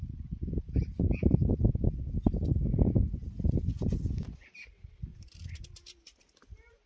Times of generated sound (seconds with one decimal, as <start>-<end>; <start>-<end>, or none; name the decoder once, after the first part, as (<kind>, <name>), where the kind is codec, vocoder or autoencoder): 5.1-5.6 (vocoder, BigVGAN v2)